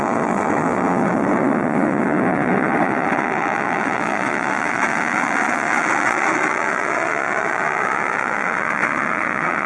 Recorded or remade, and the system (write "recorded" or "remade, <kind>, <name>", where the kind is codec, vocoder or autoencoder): remade, vocoder, Vocos